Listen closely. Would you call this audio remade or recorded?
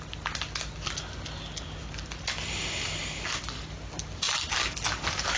recorded